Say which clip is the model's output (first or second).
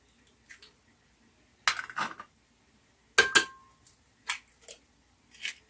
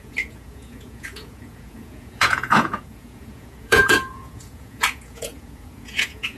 second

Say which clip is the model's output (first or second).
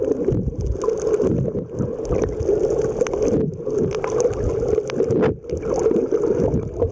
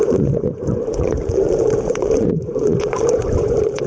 second